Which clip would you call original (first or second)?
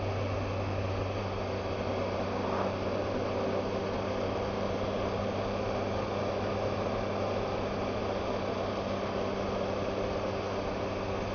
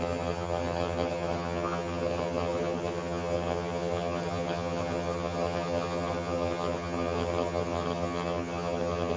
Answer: first